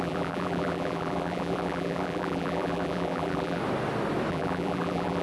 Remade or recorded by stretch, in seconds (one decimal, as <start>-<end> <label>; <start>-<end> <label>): 0.0-3.6 remade; 3.6-4.3 recorded; 4.3-5.2 remade

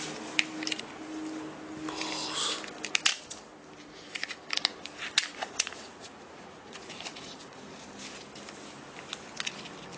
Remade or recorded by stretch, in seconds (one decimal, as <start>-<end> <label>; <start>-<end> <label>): 0.0-5.4 recorded; 5.4-7.9 remade; 7.9-10.0 recorded

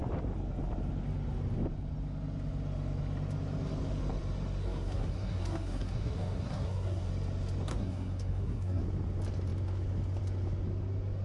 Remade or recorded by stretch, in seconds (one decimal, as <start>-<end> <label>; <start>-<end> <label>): 0.0-4.6 recorded; 4.6-7.1 remade; 7.1-7.7 recorded; 7.7-8.8 remade; 8.8-11.2 recorded

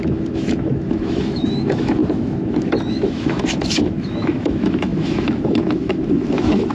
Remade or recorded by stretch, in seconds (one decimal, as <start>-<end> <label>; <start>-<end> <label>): 0.0-6.7 remade